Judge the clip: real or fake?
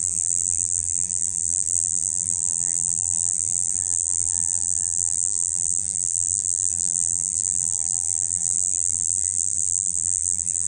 fake